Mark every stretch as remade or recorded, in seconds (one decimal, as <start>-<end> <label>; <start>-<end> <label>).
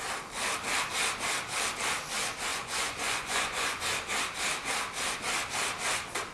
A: 0.0-2.5 recorded; 2.5-3.8 remade; 3.8-6.3 recorded